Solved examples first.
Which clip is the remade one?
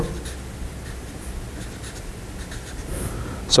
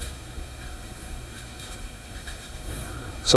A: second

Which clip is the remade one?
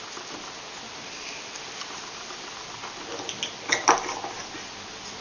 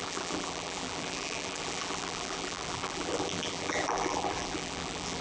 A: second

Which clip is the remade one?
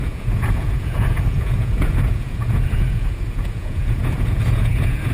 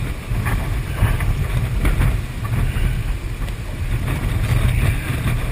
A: first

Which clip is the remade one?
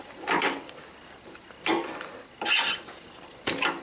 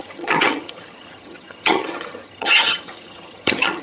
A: second